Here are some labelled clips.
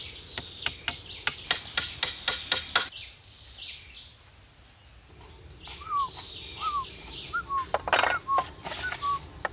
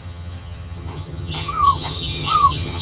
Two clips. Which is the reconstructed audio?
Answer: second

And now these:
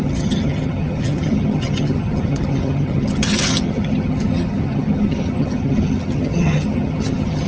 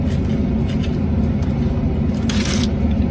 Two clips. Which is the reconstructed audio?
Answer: first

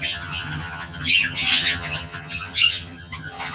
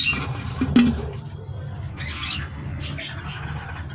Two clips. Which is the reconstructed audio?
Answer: first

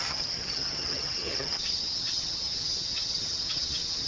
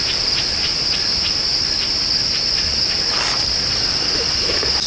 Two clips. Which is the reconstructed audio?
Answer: first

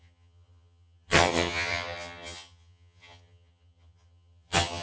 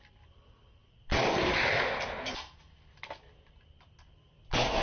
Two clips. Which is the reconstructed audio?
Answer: first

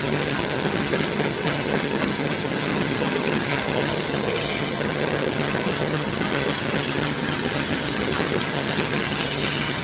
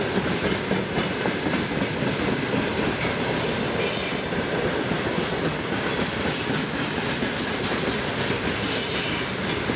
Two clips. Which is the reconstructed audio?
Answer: first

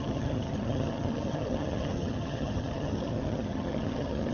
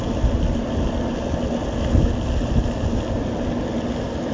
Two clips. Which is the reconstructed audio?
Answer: first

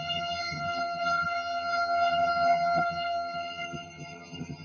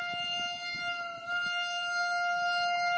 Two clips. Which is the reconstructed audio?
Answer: first